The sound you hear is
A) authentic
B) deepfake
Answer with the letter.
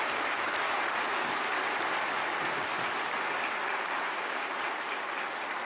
A